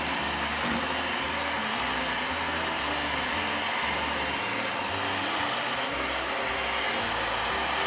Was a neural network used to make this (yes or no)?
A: no